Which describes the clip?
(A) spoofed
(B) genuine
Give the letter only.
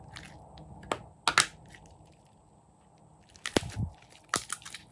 B